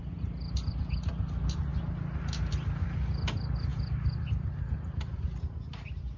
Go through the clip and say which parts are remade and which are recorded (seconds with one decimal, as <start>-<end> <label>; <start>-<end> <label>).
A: 0.0-6.2 recorded